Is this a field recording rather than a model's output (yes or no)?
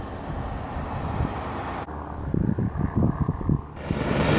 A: yes